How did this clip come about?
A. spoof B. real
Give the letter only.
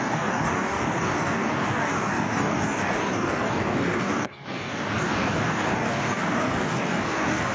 A